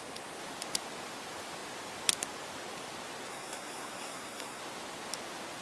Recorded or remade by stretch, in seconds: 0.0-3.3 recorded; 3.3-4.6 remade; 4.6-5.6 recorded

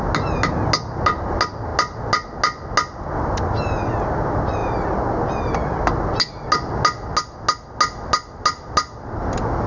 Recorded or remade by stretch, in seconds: 0.0-9.7 recorded

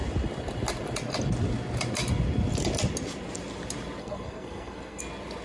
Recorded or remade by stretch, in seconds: 0.0-4.0 recorded; 4.0-5.0 remade; 5.0-5.4 recorded